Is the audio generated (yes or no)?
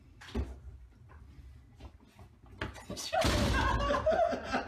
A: no